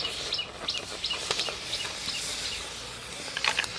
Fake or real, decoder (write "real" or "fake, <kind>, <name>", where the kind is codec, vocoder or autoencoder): real